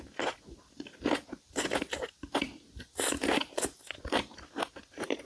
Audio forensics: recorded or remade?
recorded